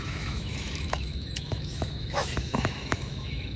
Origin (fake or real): fake